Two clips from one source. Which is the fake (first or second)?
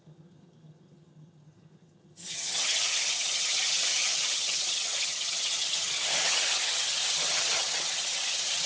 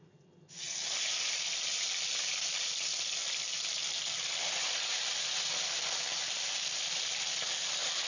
first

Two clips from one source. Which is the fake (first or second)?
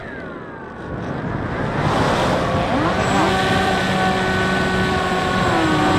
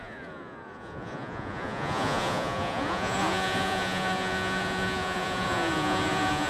second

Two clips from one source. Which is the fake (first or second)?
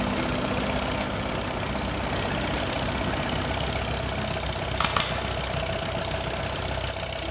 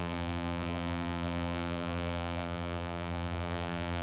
second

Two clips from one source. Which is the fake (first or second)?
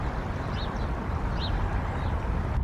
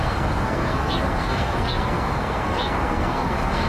second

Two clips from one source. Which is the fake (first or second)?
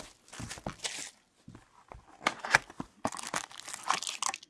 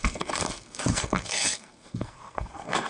second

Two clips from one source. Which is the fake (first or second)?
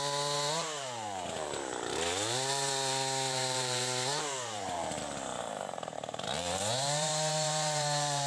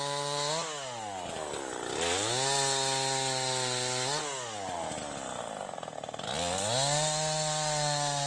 first